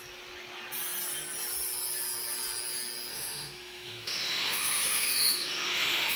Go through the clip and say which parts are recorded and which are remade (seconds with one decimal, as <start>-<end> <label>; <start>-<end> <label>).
0.0-3.1 recorded; 3.1-6.2 remade